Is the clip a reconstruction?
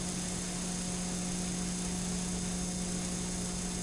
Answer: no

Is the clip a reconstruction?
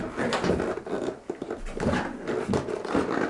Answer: no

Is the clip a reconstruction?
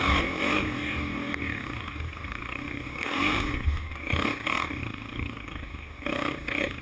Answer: yes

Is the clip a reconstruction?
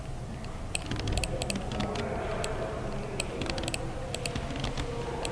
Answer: no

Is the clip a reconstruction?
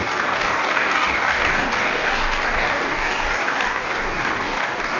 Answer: yes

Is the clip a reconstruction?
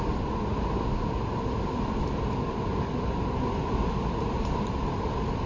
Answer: no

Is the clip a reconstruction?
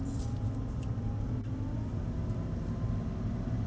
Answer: no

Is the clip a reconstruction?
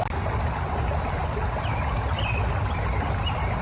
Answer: no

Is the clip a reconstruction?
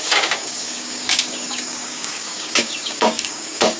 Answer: yes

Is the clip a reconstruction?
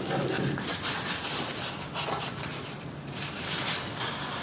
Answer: no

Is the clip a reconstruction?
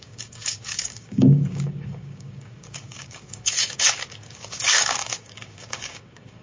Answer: yes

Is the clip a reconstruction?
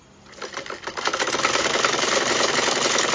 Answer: no